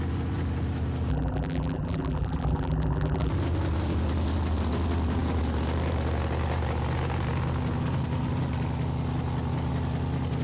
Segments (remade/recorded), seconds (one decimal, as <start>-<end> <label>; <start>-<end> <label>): 0.0-1.1 recorded; 1.1-3.3 remade; 3.3-10.4 recorded